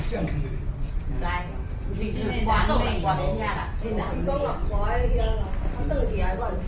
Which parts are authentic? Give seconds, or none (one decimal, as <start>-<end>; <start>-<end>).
0.0-6.7